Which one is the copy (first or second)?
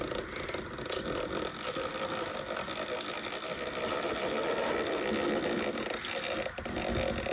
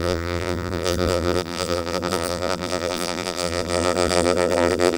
second